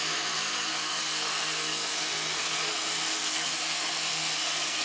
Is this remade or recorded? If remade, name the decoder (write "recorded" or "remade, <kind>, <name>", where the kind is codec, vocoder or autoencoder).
remade, codec, SNAC